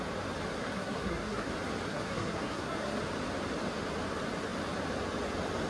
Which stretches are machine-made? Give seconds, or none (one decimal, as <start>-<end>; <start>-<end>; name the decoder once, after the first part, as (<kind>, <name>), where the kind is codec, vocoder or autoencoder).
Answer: 0.6-1.5 (codec, SNAC); 1.9-3.0